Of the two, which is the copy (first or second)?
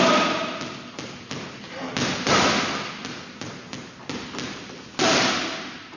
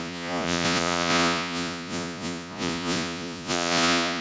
second